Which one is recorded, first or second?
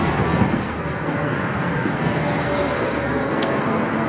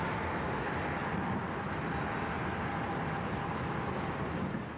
second